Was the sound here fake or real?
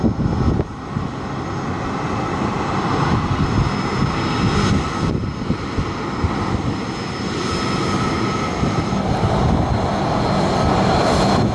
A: real